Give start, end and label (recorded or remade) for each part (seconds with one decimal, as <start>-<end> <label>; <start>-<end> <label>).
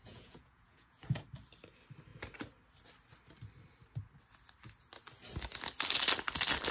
0.0-1.2 remade; 1.2-6.7 recorded